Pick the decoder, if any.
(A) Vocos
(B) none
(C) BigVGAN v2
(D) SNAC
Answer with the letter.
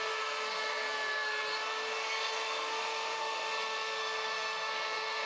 D